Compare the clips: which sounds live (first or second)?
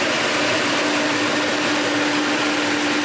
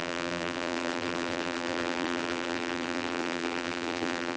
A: first